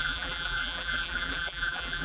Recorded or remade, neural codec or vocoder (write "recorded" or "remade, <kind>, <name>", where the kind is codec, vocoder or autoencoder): remade, vocoder, BigVGAN v2